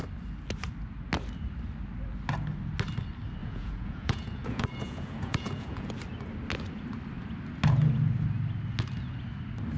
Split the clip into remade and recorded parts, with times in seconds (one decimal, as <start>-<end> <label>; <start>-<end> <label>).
0.0-3.4 recorded; 3.4-5.9 remade; 5.9-9.8 recorded